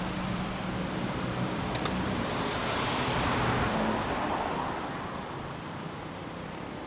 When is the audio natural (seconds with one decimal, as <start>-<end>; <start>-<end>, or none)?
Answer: none